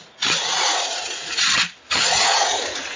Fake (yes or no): yes